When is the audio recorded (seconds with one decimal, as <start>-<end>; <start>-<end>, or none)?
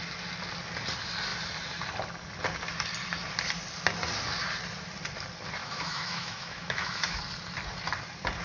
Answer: 0.0-5.6; 7.2-8.4